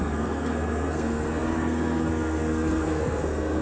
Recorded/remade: remade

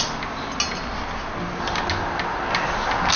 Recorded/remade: recorded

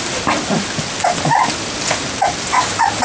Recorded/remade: recorded